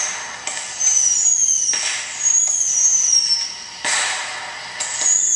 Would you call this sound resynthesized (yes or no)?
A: no